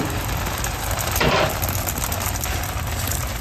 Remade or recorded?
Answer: recorded